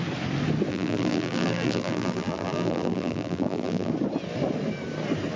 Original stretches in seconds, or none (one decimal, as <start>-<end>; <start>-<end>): 0.0-0.7; 3.9-5.4